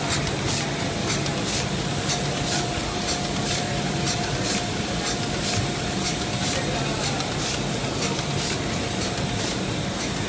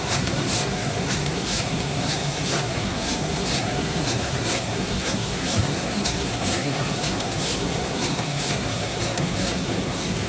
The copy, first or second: second